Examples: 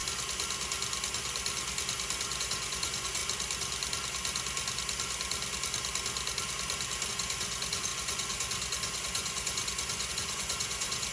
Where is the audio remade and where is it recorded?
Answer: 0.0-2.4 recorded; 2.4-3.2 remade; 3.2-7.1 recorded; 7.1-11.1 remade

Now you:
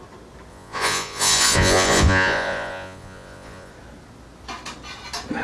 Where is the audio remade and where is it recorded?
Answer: 0.0-0.5 recorded; 0.5-3.7 remade; 3.7-5.4 recorded

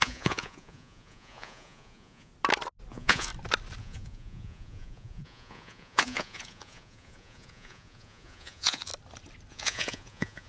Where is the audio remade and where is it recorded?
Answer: 0.0-2.3 remade; 2.3-2.9 recorded; 2.9-3.3 remade; 3.3-3.8 recorded; 3.8-8.9 remade; 8.9-9.5 recorded; 9.5-10.5 remade

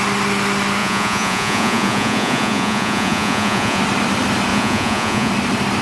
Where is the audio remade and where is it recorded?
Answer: 0.0-0.8 recorded; 0.8-3.8 remade; 3.8-4.5 recorded; 4.5-5.3 remade; 5.3-5.8 recorded

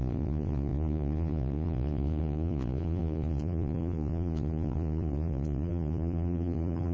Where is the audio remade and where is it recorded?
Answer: 0.0-6.9 remade

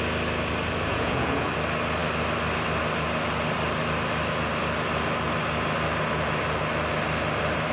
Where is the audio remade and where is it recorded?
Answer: 0.0-0.9 recorded; 0.9-1.5 remade; 1.5-7.7 recorded

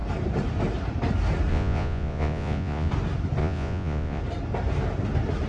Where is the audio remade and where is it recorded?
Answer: 0.0-1.5 recorded; 1.5-2.9 remade; 2.9-3.4 recorded; 3.4-4.2 remade; 4.2-5.5 recorded

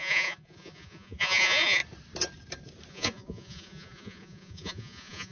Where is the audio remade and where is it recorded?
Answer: 0.0-1.8 remade; 1.8-2.9 recorded; 2.9-5.3 remade